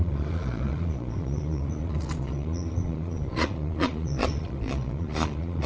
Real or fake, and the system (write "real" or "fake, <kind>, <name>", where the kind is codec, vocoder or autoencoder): fake, vocoder, Vocos